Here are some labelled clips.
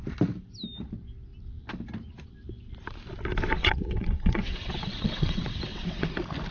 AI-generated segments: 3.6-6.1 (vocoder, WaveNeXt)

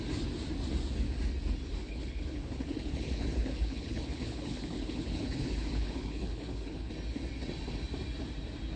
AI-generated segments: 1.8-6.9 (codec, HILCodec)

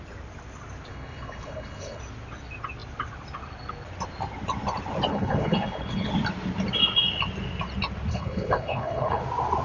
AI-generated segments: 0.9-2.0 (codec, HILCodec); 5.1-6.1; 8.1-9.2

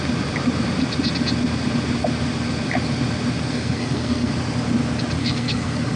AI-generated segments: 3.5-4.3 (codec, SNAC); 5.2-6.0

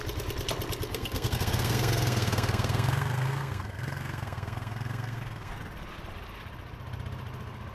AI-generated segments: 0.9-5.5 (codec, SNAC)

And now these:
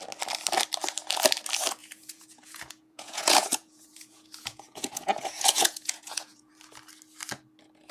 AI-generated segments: 1.8-6.5 (vocoder, Vocos)

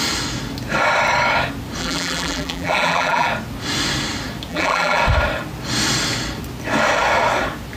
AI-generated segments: 1.8-3.3 (vocoder, BigVGAN v2); 4.5-5.0

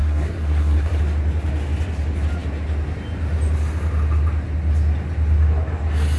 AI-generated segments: 0.0-1.0 (codec, SNAC)